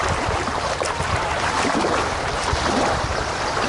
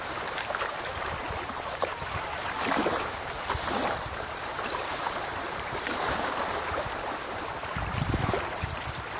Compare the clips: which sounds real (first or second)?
first